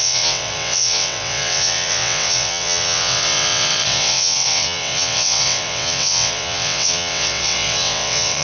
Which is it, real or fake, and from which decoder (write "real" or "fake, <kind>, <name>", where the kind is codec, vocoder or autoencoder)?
fake, vocoder, WaveNeXt